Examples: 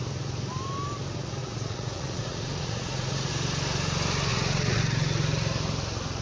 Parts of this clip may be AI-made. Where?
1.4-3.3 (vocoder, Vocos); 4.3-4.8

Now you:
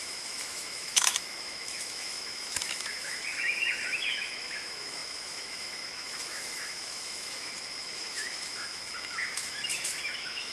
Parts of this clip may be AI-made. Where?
0.0-10.5 (autoencoder, DAC-VAE)

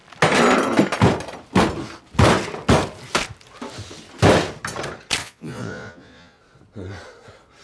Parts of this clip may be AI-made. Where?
5.2-6.4 (vocoder, Vocos)

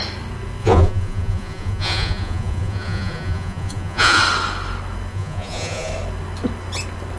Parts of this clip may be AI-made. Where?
0.6-4.2 (vocoder, Vocos); 5.1-5.9